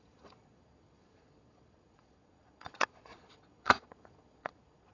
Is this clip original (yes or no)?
no